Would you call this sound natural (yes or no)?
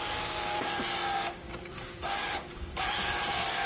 no